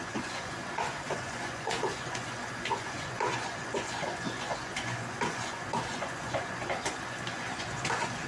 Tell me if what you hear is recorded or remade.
remade